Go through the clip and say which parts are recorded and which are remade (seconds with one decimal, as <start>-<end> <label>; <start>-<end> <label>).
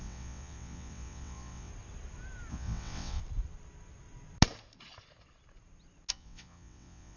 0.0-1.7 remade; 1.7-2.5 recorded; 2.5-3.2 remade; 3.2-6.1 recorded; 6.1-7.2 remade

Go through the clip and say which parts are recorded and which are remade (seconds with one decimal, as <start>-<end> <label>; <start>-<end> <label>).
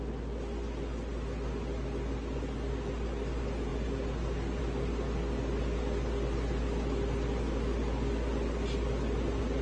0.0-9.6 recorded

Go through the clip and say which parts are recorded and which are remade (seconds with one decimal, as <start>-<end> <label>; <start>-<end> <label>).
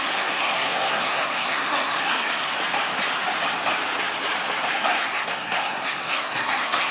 0.0-2.5 remade; 2.5-4.7 recorded; 4.7-6.9 remade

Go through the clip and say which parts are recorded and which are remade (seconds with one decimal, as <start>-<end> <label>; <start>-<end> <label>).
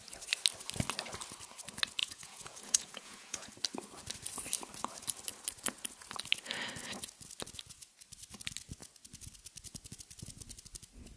0.0-2.0 recorded; 2.0-3.5 remade; 3.5-11.2 recorded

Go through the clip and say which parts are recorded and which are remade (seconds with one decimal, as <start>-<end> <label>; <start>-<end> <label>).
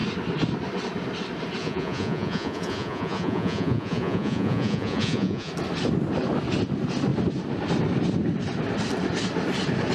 0.0-1.6 recorded; 1.6-5.5 remade; 5.5-9.9 recorded